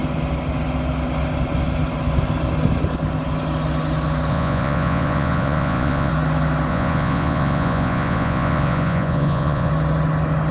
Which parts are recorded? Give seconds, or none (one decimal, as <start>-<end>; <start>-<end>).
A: 0.0-4.3; 6.1-6.7; 9.7-10.5